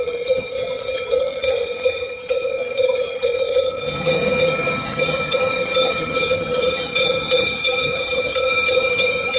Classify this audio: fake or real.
fake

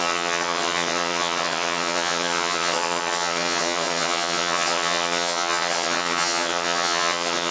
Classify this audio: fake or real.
fake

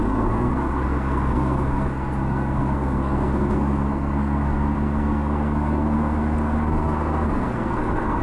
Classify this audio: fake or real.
fake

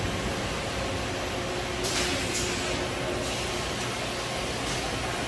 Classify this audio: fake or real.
real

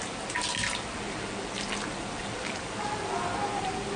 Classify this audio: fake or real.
fake